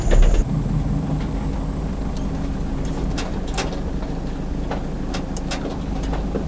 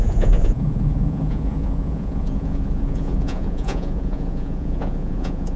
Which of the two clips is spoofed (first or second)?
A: second